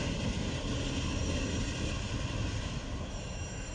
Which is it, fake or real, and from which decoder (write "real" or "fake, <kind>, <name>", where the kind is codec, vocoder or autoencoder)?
real